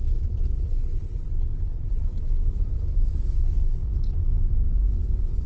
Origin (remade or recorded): recorded